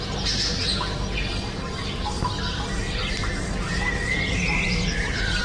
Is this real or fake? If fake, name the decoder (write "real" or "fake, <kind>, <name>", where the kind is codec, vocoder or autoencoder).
real